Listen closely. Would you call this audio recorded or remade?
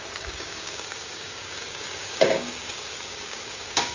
remade